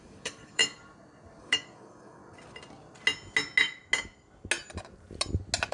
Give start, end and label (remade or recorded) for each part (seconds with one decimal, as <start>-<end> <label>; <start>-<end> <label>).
0.0-0.6 remade; 0.6-1.4 recorded; 1.4-2.2 remade; 2.2-5.7 recorded